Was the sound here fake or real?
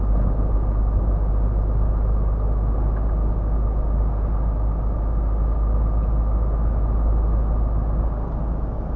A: real